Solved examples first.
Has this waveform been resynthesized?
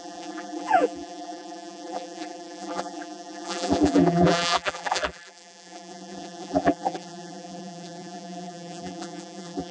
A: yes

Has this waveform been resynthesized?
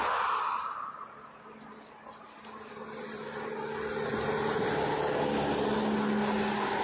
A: no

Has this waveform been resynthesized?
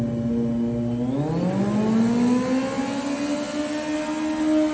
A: no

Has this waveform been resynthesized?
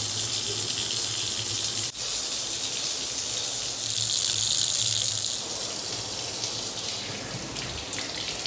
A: no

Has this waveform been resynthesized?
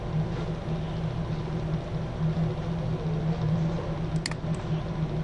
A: no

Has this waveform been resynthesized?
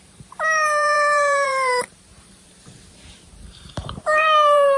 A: yes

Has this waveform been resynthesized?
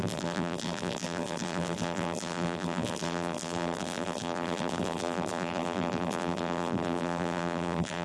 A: yes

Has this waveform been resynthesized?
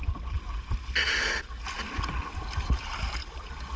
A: no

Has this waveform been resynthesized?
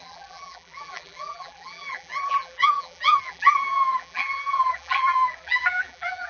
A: yes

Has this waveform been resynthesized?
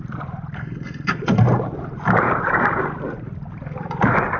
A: yes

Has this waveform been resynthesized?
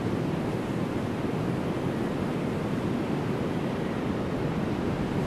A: no